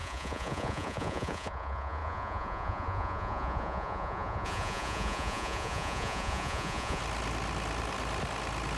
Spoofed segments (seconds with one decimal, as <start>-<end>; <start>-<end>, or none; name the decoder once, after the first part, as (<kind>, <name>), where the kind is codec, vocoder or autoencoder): 0.0-7.0 (vocoder, Vocos)

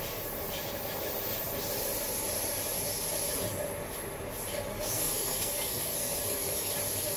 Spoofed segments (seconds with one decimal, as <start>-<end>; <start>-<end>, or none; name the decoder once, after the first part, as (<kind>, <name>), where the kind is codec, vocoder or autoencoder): 4.7-6.7 (codec, SNAC)

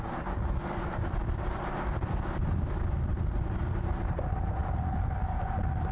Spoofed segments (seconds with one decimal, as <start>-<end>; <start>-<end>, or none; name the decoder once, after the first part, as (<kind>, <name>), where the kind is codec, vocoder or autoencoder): 0.0-4.6 (vocoder, BigVGAN v2); 5.5-5.9